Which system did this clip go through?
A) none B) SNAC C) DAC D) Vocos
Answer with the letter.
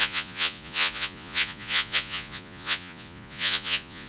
D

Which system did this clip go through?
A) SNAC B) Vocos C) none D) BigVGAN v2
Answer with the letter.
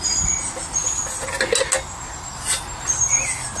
C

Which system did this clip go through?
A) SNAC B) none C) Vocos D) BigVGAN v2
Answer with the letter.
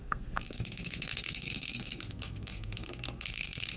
A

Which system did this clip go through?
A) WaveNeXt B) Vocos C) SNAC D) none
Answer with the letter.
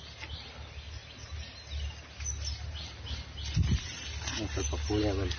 D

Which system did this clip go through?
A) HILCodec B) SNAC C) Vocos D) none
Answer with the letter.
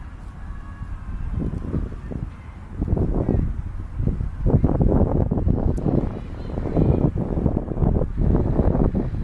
D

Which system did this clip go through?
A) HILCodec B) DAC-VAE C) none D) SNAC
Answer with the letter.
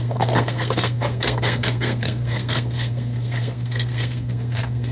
D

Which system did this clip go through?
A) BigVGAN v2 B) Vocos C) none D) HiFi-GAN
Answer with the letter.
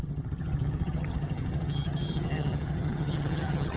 D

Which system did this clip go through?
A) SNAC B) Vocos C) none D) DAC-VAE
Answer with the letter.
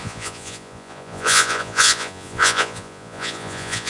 B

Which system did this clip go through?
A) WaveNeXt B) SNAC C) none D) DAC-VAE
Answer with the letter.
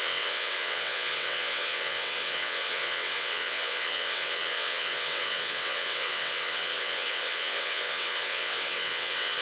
A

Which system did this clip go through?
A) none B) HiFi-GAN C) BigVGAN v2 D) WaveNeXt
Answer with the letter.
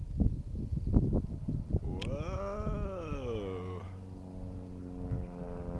A